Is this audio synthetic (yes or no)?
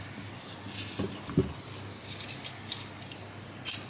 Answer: no